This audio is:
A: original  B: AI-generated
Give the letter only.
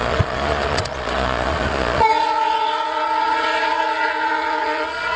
B